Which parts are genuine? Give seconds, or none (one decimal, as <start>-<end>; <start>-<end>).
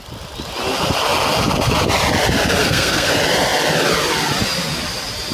0.0-2.6; 3.1-5.3